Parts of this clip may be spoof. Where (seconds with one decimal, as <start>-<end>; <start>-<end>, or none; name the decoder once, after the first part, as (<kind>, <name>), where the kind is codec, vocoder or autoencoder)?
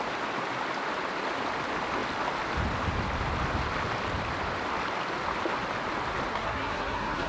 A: 6.3-7.3 (codec, SNAC)